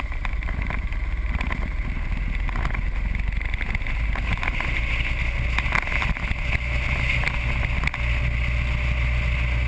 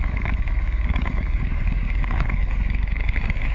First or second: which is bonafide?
first